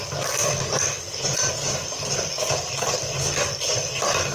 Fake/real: real